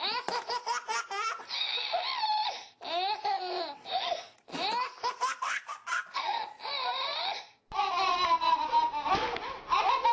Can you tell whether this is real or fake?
real